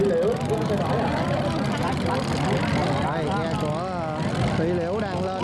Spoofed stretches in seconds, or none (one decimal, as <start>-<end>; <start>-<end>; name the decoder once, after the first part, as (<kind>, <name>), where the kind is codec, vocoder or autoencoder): none